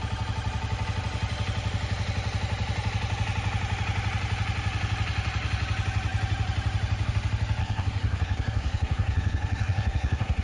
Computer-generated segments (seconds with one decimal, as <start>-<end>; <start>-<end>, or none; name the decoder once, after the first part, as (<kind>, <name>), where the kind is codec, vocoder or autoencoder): 7.6-10.4 (codec, SNAC)